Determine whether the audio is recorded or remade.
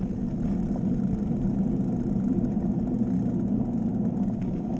recorded